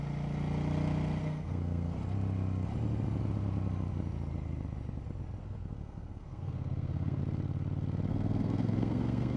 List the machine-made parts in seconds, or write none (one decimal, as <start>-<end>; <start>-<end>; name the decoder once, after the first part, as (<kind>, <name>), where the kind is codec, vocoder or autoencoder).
1.2-2.0 (codec, SNAC); 5.4-7.2; 8.1-9.4